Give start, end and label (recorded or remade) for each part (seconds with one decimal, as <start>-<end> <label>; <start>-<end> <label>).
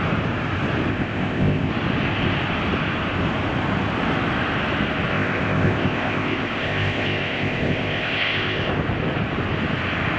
0.0-0.9 recorded; 0.9-1.7 remade; 1.7-5.1 recorded; 5.1-8.7 remade; 8.7-10.2 recorded